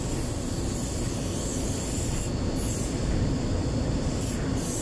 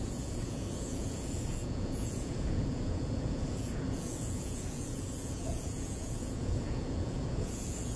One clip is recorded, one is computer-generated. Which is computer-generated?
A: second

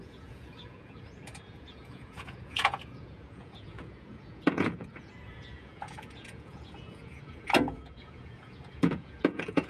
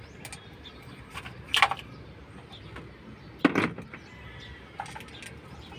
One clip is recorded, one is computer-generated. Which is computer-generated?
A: first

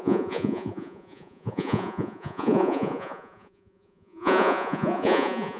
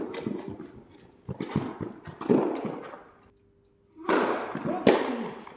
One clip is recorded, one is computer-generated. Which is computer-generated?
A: first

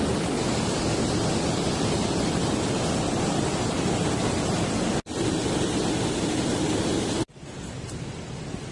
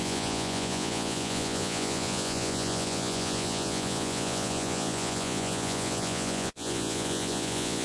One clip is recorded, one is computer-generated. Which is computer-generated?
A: second